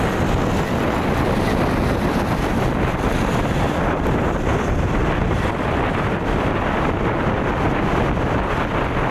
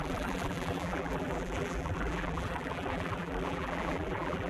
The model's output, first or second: second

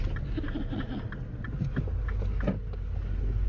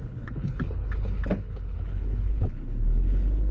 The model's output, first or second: second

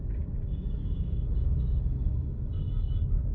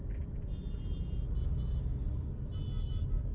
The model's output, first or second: first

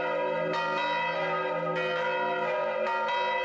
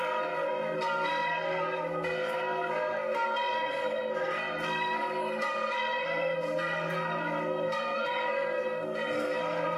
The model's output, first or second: second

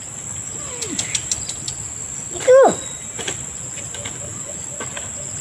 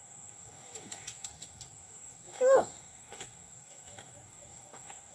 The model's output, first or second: second